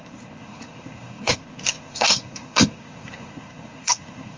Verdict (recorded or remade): remade